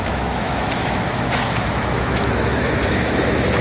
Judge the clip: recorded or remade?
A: remade